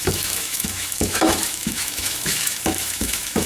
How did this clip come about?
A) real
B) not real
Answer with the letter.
B